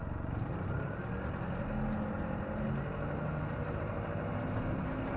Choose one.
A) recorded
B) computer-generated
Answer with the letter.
A